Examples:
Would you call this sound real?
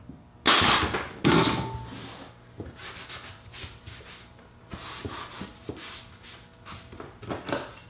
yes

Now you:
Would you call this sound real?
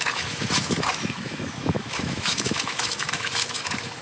no